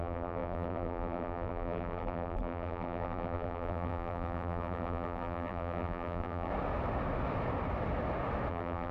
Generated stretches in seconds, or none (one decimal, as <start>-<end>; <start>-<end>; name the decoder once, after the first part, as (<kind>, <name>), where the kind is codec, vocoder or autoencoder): 0.0-6.5 (vocoder, BigVGAN v2); 8.5-8.9